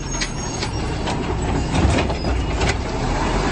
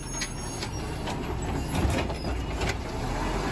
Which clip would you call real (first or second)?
second